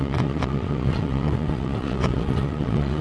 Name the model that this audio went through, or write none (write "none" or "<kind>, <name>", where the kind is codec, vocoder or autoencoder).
vocoder, WaveNeXt